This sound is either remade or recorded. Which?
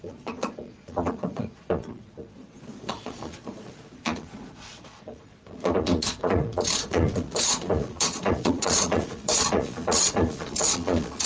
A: remade